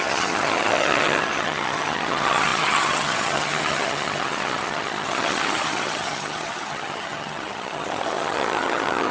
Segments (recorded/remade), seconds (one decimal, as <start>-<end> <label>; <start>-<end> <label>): 0.0-9.1 remade